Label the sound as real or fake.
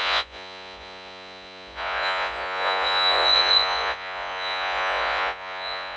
fake